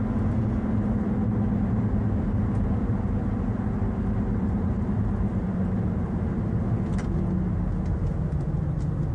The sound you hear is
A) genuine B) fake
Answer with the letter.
A